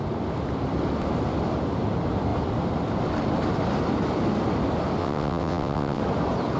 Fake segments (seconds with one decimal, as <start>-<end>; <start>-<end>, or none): 5.0-6.0